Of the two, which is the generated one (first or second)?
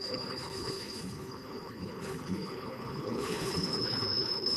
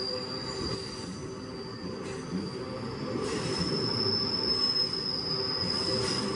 first